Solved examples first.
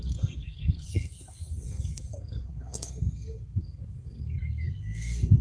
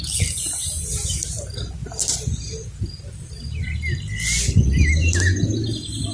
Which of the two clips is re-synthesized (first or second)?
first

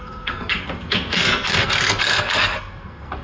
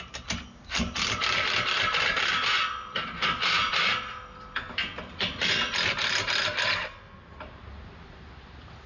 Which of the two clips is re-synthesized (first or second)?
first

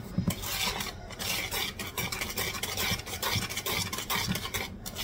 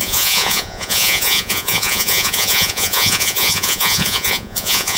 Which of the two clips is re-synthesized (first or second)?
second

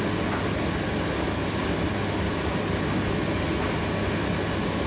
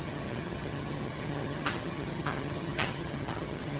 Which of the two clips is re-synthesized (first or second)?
second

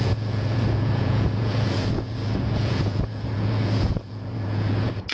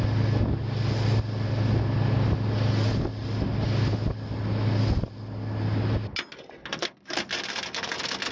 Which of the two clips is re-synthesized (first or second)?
first